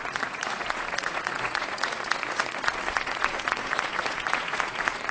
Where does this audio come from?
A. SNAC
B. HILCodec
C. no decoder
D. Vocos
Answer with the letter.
D